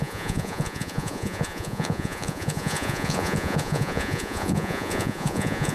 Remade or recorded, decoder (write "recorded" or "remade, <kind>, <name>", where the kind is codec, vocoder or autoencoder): remade, vocoder, Vocos